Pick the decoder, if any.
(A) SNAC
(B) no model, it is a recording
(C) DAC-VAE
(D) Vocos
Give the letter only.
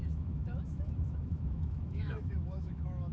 C